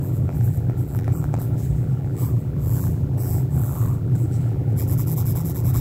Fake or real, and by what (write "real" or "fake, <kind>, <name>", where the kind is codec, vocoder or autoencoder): fake, vocoder, BigVGAN v2